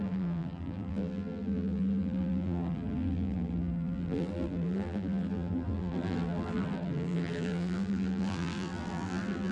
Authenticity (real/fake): fake